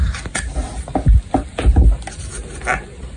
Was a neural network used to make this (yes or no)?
no